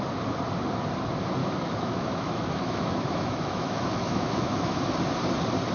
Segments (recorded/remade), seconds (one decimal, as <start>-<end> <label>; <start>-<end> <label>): 0.0-1.4 recorded; 1.4-4.8 remade; 4.8-5.7 recorded